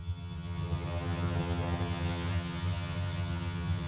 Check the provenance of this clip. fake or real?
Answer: fake